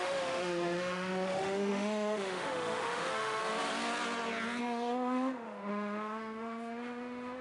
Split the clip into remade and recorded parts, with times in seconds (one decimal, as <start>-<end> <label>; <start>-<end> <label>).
0.0-3.4 remade; 3.4-4.6 recorded; 4.6-7.4 remade